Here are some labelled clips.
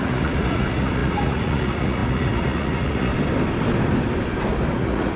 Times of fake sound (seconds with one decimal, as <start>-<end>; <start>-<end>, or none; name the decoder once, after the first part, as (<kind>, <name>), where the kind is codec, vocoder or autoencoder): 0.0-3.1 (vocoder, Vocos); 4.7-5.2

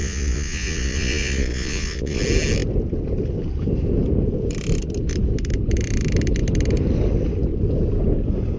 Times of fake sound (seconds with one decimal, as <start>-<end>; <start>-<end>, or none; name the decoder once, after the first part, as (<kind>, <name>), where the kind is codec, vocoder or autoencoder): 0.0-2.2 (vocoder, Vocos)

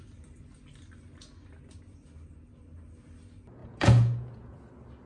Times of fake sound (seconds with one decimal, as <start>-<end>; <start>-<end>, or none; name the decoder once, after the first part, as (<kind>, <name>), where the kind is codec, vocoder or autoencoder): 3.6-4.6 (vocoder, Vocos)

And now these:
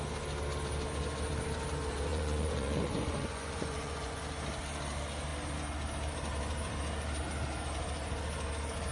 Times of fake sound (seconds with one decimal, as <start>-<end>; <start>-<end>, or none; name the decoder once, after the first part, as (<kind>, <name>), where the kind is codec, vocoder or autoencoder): 2.1-4.2 (vocoder, Vocos)

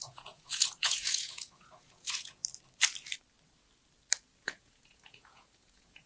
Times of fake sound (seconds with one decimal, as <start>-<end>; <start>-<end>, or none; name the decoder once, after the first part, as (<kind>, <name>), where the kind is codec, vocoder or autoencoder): 0.0-2.4 (vocoder, Vocos); 4.4-6.1

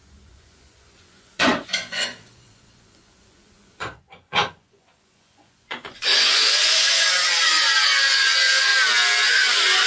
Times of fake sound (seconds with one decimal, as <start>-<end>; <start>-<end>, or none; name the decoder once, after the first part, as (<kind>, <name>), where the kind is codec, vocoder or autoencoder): 0.0-8.7 (vocoder, Vocos); 9.3-9.9

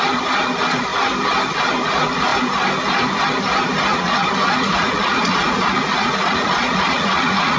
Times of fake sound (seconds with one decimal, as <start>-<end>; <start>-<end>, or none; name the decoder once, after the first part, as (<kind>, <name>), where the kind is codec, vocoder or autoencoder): 3.9-7.6 (vocoder, Vocos)

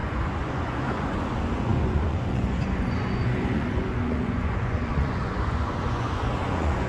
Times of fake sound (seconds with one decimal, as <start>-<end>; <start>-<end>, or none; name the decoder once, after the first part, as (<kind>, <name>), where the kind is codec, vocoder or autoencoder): 0.0-6.9 (vocoder, Vocos)